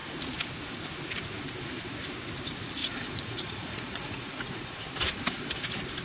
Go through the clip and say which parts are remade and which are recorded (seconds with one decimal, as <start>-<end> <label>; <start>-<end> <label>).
0.0-2.8 recorded; 2.8-4.8 remade; 4.8-6.0 recorded

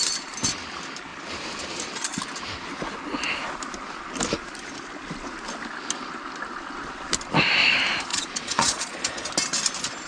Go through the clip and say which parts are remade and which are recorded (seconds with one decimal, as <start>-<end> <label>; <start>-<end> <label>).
0.0-8.1 recorded; 8.1-9.3 remade; 9.3-10.1 recorded

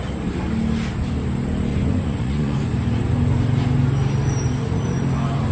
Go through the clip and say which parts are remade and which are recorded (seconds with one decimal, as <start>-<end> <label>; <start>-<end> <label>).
0.0-1.7 recorded; 1.7-2.7 remade; 2.7-5.5 recorded

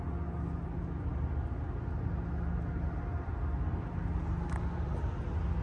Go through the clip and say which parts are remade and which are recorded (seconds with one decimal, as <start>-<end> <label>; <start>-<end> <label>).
0.0-5.6 recorded

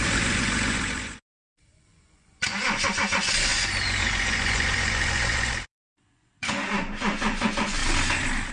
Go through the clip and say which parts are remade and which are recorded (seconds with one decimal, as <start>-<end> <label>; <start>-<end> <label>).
0.0-7.8 remade; 7.8-8.5 recorded

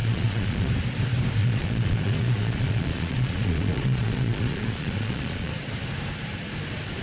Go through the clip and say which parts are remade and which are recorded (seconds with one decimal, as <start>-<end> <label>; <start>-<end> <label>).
0.0-0.7 remade; 0.7-1.4 recorded; 1.4-5.5 remade; 5.5-7.0 recorded

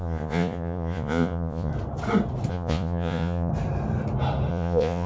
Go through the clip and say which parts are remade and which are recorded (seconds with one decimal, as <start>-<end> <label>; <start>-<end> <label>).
0.0-1.7 remade; 1.7-2.5 recorded; 2.5-3.5 remade; 3.5-4.5 recorded; 4.5-5.1 remade

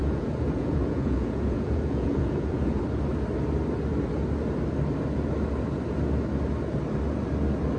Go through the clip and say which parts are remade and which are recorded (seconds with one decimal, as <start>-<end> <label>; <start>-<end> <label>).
0.0-2.8 remade; 2.8-7.8 recorded